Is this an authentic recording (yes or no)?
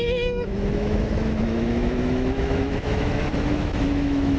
no